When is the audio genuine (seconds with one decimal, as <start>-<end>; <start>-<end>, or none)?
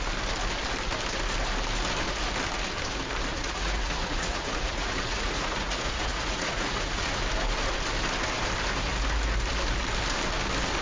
0.0-3.3; 7.2-10.8